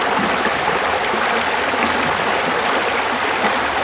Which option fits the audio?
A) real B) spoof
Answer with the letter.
A